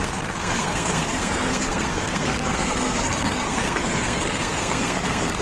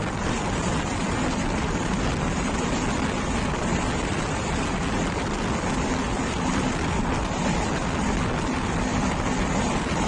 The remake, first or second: first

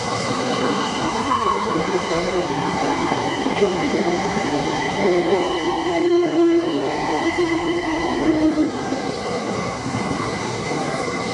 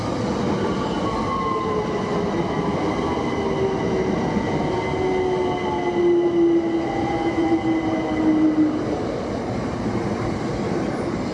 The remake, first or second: first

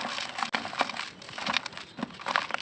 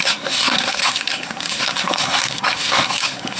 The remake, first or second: second